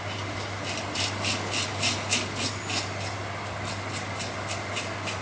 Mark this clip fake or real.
real